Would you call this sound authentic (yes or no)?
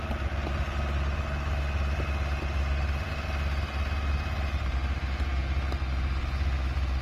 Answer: yes